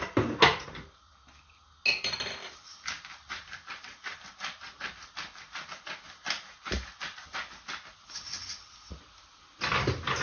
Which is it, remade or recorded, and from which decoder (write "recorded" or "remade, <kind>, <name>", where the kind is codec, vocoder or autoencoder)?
recorded